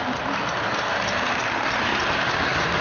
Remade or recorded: recorded